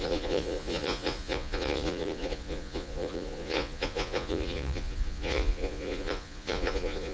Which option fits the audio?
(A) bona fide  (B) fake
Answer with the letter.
B